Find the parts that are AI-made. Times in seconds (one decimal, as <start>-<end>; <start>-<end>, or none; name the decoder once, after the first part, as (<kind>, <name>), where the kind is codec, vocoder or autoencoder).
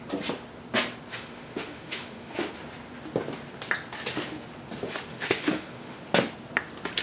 1.1-2.5 (autoencoder, DAC-VAE); 5.1-6.0